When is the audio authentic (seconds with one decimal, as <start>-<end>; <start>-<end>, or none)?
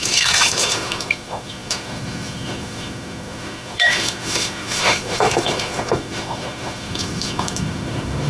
none